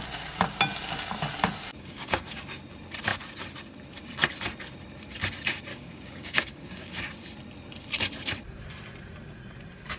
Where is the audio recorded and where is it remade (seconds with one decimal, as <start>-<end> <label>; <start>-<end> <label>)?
0.0-1.7 recorded; 1.7-2.4 remade; 2.4-5.7 recorded; 5.7-7.1 remade; 7.1-10.0 recorded